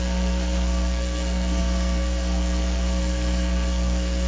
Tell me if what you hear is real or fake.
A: fake